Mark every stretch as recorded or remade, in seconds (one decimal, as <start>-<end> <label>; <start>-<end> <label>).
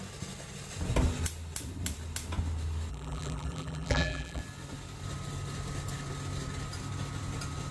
0.0-2.9 recorded; 2.9-4.4 remade; 4.4-7.7 recorded